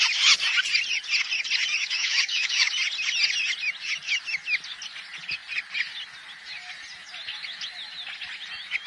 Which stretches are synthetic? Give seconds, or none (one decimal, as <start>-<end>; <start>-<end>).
1.8-2.7